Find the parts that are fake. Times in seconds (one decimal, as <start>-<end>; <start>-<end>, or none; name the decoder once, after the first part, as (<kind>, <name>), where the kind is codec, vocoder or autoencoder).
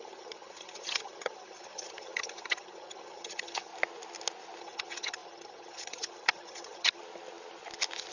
0.0-3.7 (vocoder, HiFi-GAN); 4.6-7.0